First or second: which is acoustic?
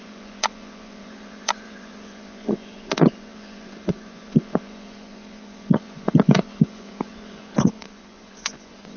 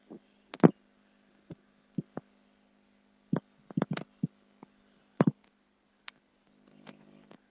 second